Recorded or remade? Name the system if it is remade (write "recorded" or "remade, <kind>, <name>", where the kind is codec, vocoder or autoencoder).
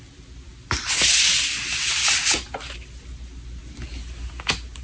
recorded